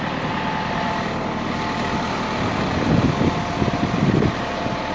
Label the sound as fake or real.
real